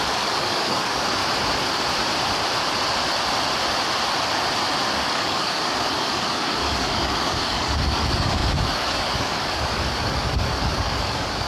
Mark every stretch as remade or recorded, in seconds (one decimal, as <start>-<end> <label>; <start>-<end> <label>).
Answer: 0.0-1.2 remade; 1.2-4.9 recorded; 4.9-11.5 remade